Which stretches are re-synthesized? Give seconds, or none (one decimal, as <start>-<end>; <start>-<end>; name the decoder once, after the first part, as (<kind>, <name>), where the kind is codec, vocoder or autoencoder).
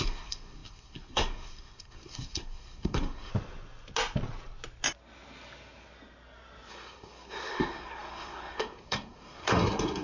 0.0-3.3 (codec, SNAC); 6.7-10.0